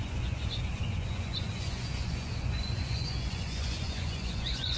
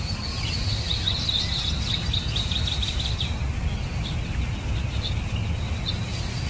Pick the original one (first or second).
second